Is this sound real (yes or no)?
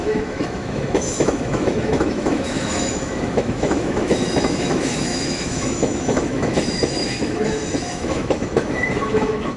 no